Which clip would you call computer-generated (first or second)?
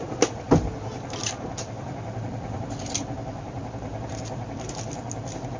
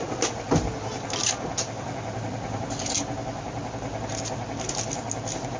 first